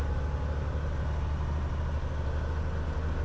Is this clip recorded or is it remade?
recorded